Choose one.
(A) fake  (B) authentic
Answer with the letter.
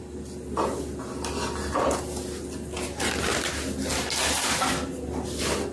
B